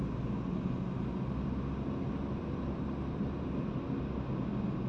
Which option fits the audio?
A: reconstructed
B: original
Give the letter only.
B